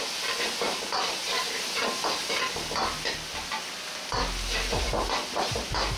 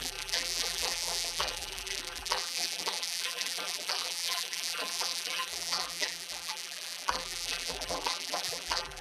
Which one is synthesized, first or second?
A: second